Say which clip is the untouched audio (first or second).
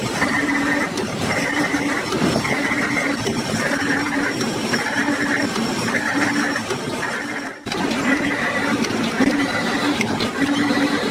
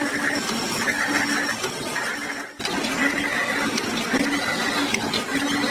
second